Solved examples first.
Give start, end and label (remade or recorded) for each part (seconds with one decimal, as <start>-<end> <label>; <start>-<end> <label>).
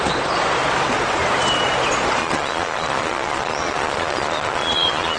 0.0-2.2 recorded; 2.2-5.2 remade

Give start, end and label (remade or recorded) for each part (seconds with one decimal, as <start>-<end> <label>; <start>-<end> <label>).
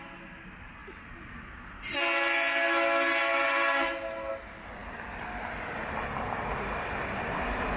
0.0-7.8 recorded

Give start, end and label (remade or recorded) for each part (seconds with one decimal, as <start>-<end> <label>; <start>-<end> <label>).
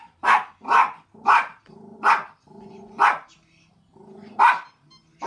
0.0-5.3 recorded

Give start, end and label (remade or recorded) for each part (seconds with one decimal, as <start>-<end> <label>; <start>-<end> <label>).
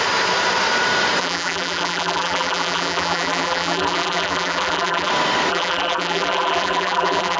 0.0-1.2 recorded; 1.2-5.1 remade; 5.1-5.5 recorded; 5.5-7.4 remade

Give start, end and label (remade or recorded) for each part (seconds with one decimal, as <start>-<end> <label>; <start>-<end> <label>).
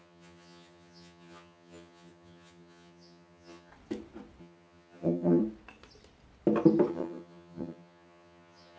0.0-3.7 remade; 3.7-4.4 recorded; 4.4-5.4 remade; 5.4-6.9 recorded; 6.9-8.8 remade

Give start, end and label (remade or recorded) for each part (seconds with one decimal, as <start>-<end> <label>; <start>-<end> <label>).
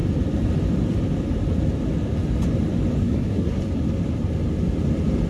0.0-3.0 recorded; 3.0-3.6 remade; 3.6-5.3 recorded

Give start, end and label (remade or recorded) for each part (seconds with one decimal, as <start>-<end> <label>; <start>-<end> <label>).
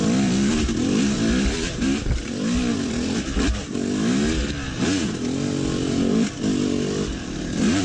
0.0-7.8 recorded